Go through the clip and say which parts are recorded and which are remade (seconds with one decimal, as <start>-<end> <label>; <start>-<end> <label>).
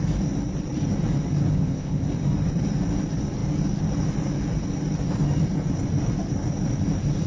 0.0-1.5 recorded; 1.5-2.1 remade; 2.1-7.3 recorded